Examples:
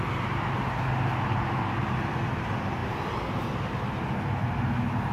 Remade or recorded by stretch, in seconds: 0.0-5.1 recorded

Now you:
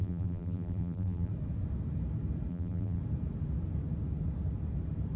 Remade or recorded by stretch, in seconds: 0.0-1.3 remade; 1.3-2.5 recorded; 2.5-3.0 remade; 3.0-5.2 recorded